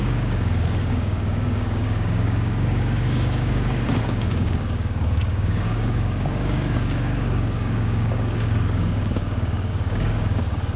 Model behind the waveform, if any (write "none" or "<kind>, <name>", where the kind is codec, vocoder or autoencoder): codec, DAC